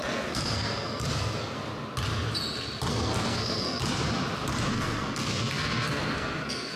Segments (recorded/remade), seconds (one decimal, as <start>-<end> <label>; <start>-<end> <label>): 0.0-1.6 remade; 1.6-2.9 recorded; 2.9-3.8 remade; 3.8-4.7 recorded; 4.7-6.8 remade